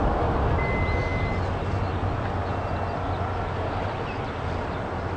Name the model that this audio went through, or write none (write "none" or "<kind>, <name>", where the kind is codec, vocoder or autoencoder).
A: none